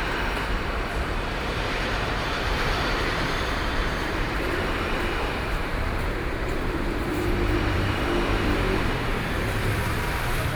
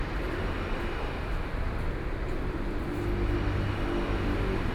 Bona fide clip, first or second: second